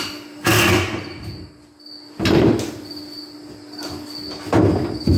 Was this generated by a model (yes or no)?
no